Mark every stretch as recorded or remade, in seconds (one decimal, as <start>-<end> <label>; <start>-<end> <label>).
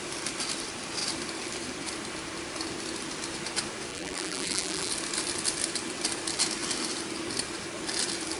0.0-3.9 recorded; 3.9-4.9 remade; 4.9-8.4 recorded